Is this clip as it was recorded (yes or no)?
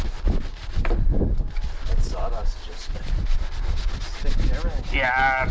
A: yes